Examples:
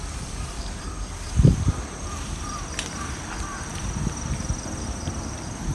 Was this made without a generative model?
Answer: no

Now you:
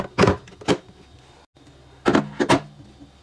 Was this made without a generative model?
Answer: yes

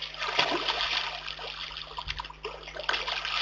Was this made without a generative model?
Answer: yes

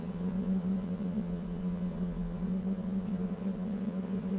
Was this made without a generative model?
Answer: no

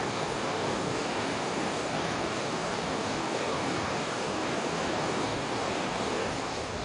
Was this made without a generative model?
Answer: no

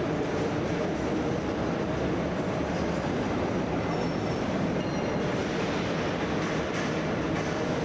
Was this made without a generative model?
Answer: yes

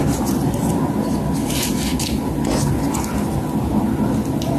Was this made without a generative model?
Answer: yes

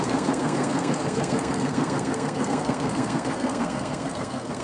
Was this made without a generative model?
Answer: no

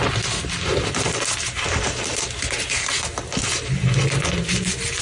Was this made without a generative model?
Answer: yes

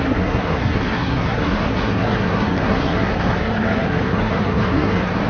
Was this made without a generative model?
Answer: no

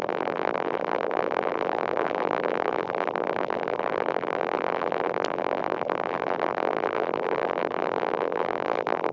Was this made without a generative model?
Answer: no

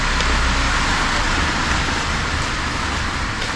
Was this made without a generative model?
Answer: yes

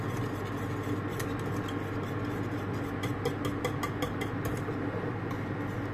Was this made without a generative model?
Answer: yes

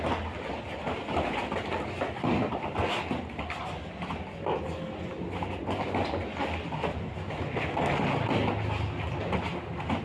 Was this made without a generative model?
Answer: yes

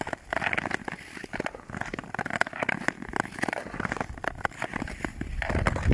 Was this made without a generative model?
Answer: yes